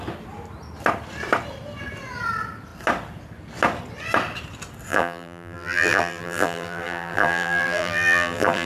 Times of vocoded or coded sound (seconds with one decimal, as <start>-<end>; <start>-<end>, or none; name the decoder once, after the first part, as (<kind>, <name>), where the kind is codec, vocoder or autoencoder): 4.9-8.7 (vocoder, BigVGAN v2)